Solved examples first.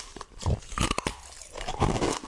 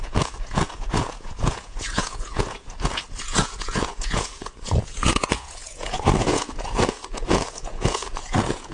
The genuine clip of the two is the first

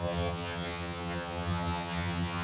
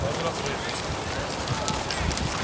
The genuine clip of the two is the second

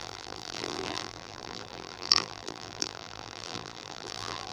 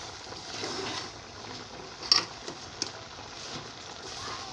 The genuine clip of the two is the second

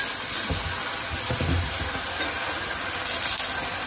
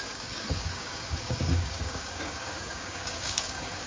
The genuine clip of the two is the first